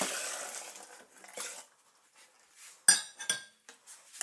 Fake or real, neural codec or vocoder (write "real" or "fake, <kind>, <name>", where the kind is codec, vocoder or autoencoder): real